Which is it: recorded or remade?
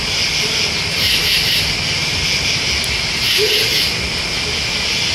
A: recorded